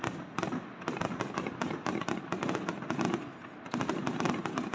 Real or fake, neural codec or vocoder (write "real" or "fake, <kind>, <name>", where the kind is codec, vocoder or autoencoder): real